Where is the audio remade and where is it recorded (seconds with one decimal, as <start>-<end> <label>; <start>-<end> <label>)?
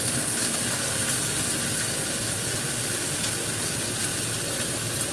0.0-5.1 recorded